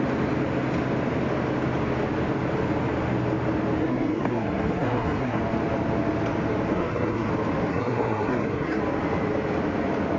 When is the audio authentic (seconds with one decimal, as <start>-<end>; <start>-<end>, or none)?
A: 0.0-3.8; 5.4-6.7; 7.3-7.7; 8.8-10.2